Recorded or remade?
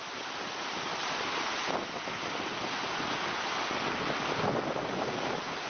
recorded